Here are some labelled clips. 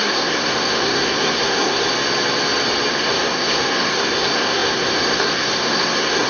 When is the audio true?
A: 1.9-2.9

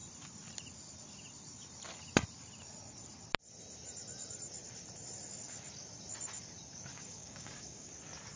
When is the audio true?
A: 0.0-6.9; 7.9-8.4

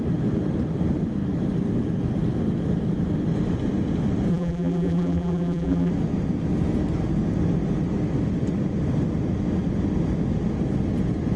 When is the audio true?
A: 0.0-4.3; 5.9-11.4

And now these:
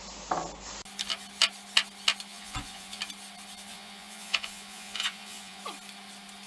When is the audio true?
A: 0.0-2.3; 3.0-3.7; 5.6-6.5